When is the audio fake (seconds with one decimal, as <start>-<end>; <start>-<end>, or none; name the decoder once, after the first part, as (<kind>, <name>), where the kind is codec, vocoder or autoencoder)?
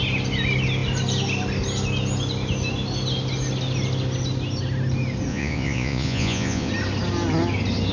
5.3-6.7 (vocoder, Vocos)